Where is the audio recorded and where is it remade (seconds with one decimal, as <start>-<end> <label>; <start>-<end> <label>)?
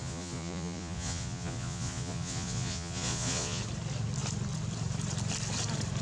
0.0-3.6 remade; 3.6-6.0 recorded